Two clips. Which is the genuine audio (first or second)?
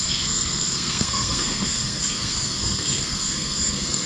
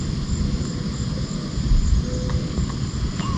second